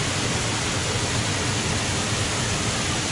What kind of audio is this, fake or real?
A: real